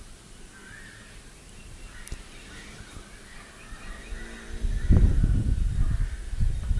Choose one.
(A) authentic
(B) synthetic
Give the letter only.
A